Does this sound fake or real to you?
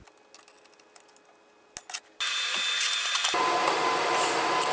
real